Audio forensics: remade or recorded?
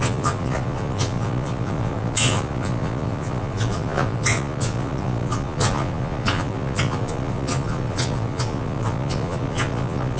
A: remade